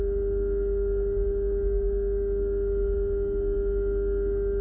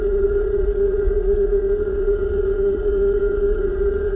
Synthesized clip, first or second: second